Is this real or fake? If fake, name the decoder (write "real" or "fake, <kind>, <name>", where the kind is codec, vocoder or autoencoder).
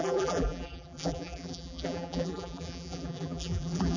fake, vocoder, BigVGAN v2